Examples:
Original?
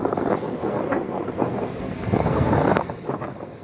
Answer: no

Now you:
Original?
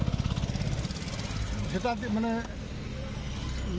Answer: yes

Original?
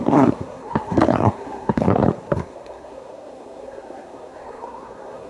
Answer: no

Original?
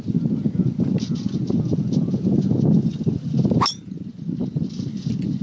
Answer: yes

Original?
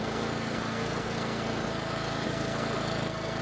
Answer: no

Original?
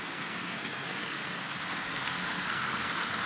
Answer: no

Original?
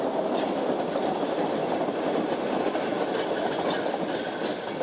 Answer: yes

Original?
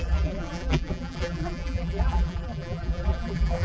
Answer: no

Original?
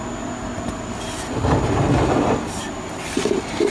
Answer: yes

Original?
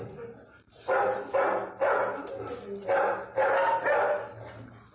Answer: yes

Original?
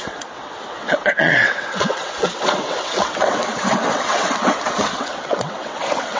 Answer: no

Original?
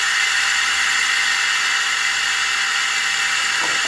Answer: yes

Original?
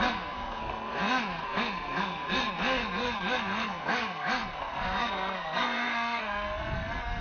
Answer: no